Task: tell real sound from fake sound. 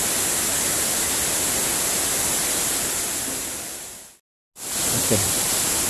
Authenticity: real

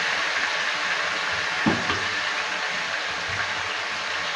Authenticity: real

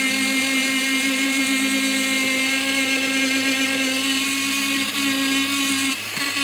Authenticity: real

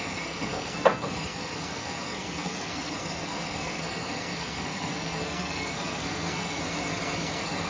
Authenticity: fake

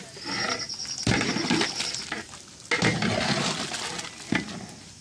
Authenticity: real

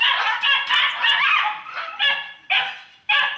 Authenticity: real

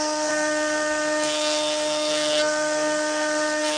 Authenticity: fake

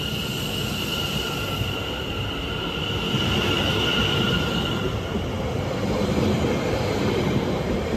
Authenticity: real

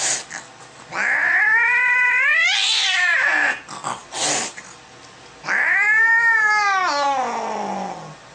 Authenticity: real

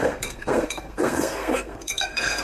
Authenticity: fake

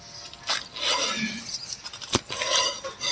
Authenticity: real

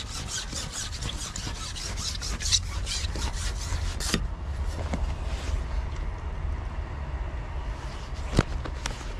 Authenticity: real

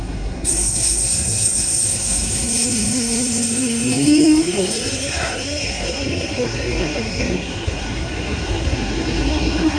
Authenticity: fake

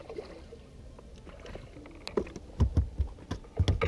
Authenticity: real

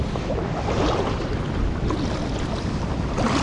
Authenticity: real